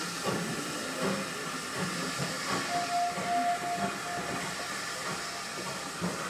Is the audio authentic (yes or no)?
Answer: yes